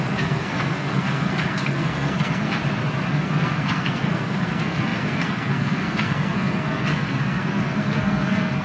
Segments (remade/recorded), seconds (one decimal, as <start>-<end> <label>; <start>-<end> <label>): 0.0-2.6 remade; 2.6-3.1 recorded; 3.1-8.6 remade